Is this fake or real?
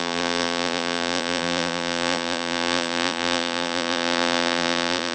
fake